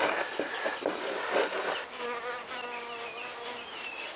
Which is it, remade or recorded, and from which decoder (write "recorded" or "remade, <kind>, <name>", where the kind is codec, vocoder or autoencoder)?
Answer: recorded